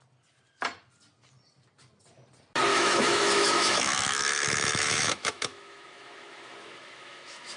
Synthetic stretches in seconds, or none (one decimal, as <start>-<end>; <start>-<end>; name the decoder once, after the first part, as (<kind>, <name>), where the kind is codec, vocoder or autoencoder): 2.7-7.6 (autoencoder, DAC-VAE)